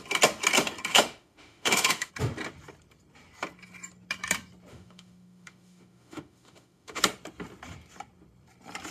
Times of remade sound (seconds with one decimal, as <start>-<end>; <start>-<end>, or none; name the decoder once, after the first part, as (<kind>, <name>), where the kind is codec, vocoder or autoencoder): 0.9-2.1 (autoencoder, DAC-VAE); 4.7-7.0